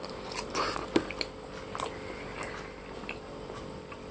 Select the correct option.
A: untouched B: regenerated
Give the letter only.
A